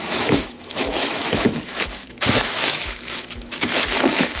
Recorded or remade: remade